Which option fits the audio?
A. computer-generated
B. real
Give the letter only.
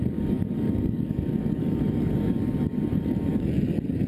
A